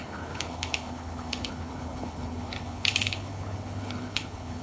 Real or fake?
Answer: fake